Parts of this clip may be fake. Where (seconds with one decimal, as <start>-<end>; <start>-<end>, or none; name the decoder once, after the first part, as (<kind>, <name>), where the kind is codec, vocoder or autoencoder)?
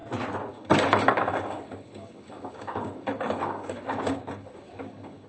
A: 0.5-5.3 (codec, DAC)